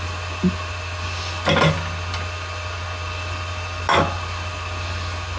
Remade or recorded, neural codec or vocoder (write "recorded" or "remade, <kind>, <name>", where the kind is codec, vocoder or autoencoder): recorded